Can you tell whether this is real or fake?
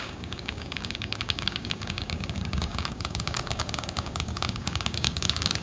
fake